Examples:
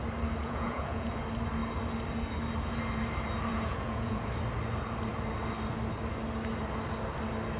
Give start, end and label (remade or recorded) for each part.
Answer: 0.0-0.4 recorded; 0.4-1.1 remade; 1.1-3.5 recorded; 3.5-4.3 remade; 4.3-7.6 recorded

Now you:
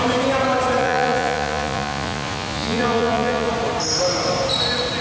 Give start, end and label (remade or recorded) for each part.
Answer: 0.0-0.8 recorded; 0.8-3.5 remade; 3.5-5.0 recorded